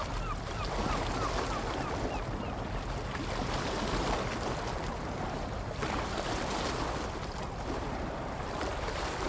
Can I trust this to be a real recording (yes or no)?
yes